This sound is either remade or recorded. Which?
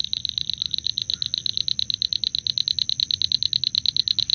recorded